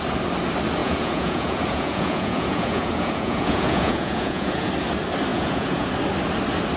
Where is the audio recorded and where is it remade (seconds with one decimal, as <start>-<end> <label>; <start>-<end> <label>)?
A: 0.0-0.8 recorded; 0.8-4.7 remade; 4.7-5.3 recorded; 5.3-5.9 remade; 5.9-6.8 recorded